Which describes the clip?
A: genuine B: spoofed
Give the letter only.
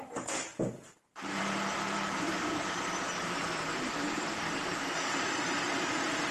B